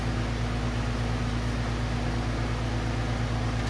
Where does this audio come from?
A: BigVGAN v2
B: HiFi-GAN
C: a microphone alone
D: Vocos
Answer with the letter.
C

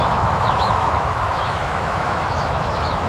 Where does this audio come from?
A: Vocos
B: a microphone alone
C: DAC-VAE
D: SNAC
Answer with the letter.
C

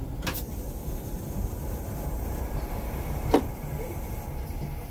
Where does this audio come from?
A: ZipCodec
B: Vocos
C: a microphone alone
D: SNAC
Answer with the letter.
C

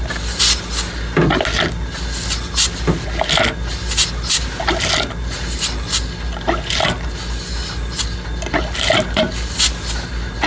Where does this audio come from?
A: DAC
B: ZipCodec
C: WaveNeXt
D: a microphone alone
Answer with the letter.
D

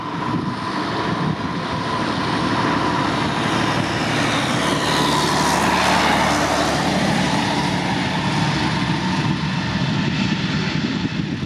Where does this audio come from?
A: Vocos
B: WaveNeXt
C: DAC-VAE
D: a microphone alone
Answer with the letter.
D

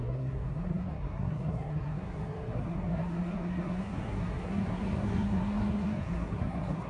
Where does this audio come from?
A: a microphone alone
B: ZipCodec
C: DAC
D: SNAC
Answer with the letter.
D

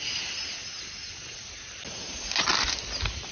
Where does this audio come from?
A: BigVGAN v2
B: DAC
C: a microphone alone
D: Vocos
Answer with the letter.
C